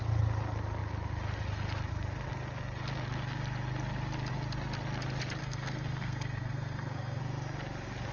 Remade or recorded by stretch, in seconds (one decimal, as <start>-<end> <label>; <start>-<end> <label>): 0.0-5.4 recorded; 5.4-7.2 remade; 7.2-8.1 recorded